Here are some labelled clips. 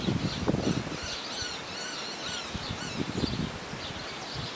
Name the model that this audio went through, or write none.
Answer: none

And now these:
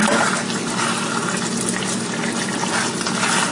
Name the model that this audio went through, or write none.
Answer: none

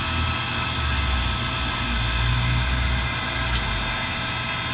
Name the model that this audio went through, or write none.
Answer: none